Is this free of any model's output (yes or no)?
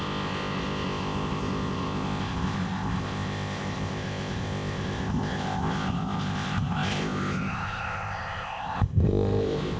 no